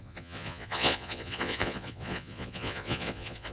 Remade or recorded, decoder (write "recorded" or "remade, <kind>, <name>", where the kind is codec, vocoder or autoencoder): remade, vocoder, Vocos